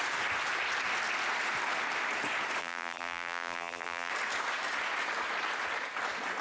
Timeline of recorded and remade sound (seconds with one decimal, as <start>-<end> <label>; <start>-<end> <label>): 0.0-2.6 recorded; 2.6-4.1 remade; 4.1-6.4 recorded